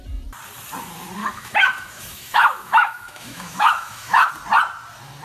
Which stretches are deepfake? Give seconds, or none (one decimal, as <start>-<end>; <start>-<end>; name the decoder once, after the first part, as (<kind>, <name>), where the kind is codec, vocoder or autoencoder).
1.2-4.3 (autoencoder, DAC-VAE)